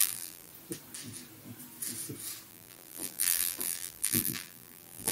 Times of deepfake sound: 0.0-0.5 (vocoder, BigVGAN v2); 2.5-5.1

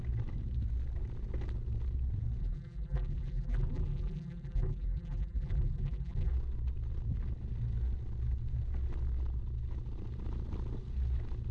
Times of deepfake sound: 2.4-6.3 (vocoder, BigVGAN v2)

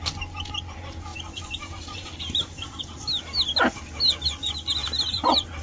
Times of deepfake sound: 1.1-2.8 (vocoder, BigVGAN v2); 4.8-5.6

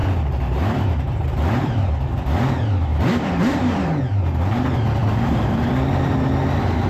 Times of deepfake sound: 0.0-1.9 (vocoder, BigVGAN v2); 2.9-4.2; 5.0-5.7